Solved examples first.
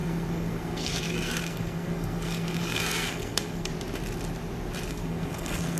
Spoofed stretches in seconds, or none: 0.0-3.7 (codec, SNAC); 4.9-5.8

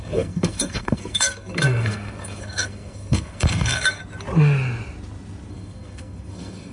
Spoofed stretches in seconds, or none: 0.0-4.0 (codec, SNAC); 5.5-6.7

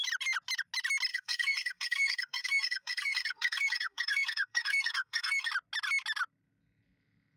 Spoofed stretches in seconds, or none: 1.1-5.5 (codec, SNAC)

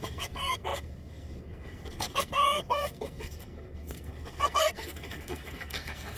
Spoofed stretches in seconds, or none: 0.0-6.2 (codec, SNAC)

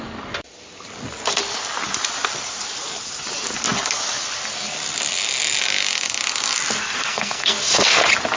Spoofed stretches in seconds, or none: 6.8-8.0 (codec, SNAC)

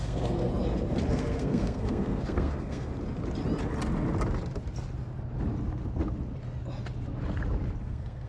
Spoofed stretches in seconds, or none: 0.0-0.5 (codec, SNAC); 1.1-2.9; 7.8-8.3

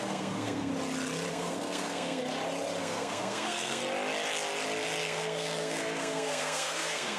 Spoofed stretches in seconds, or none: 0.0-0.7 (codec, SNAC); 1.3-2.2; 2.8-3.8; 5.0-7.2

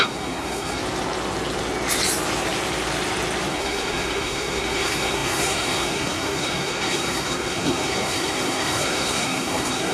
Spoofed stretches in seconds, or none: 0.0-0.8 (codec, SNAC); 3.5-9.9